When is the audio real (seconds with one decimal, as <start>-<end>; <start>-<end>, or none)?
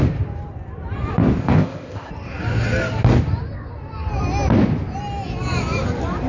0.0-1.4; 2.1-6.3